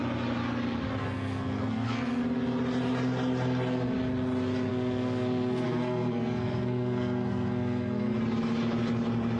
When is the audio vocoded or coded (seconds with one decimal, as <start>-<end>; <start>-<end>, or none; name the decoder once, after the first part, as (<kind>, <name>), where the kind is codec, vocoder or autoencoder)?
1.0-2.2 (codec, SNAC); 4.7-8.2